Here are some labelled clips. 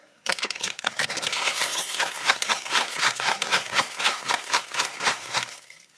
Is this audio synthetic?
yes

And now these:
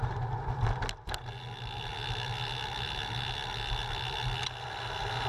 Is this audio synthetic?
no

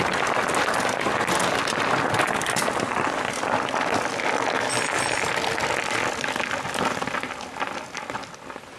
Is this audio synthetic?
no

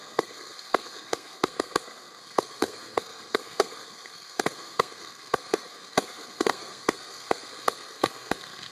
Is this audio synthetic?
yes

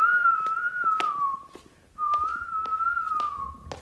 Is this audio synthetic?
no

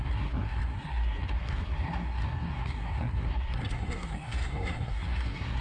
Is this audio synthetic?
yes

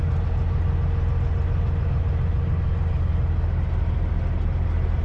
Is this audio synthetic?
no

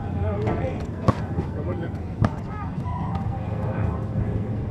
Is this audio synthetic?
yes